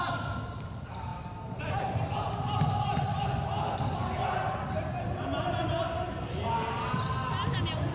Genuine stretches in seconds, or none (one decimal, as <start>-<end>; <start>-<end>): 0.0-1.1; 1.6-7.9